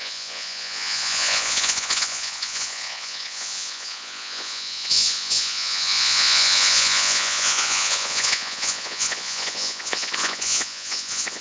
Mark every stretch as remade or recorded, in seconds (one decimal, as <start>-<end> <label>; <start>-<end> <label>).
0.0-11.4 remade